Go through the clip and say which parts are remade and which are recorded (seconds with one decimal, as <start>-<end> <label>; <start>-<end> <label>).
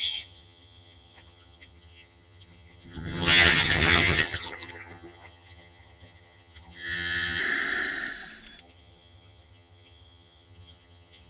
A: 0.0-7.4 remade; 7.4-8.6 recorded; 8.6-11.3 remade